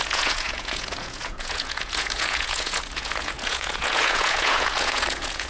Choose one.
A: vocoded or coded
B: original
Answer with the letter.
A